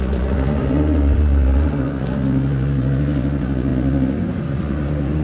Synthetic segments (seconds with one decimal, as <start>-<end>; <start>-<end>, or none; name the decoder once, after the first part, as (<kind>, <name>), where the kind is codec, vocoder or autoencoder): 0.0-5.2 (vocoder, Vocos)